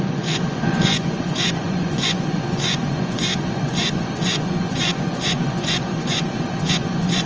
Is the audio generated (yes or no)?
yes